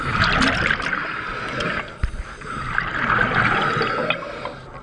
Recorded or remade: recorded